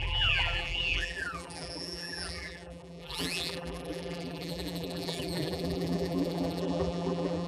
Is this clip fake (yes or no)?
yes